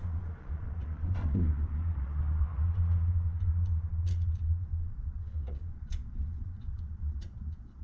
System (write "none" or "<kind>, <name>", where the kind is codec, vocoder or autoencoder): vocoder, Vocos